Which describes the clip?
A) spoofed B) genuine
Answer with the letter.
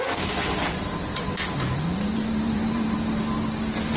B